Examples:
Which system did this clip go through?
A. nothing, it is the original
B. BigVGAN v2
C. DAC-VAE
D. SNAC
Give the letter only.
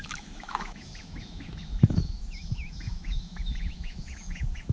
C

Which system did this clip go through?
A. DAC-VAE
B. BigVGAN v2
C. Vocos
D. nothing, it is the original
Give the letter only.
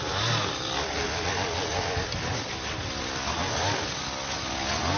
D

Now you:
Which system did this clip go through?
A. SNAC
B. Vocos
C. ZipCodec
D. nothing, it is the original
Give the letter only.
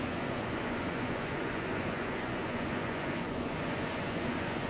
B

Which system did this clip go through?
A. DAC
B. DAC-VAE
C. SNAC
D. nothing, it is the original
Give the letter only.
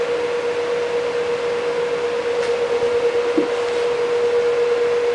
D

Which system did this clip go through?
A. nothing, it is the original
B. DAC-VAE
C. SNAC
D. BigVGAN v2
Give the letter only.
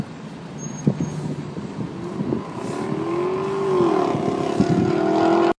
A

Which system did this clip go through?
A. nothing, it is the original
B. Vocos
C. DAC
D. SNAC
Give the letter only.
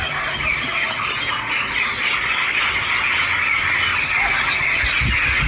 A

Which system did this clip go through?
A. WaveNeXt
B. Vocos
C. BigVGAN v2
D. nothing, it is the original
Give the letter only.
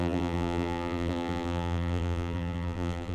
C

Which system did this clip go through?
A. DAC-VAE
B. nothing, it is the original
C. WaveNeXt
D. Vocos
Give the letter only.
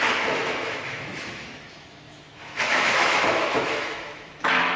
A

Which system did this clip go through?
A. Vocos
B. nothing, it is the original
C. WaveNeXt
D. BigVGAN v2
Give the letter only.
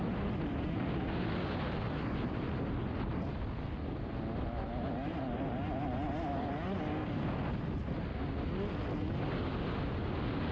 B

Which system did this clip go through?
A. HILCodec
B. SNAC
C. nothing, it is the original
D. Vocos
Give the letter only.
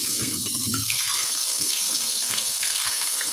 B